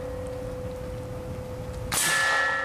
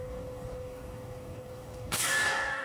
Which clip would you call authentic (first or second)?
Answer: first